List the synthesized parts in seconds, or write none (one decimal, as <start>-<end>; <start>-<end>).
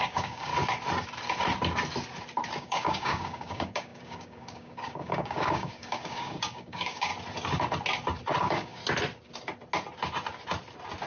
0.0-0.5; 2.6-7.1; 8.4-8.8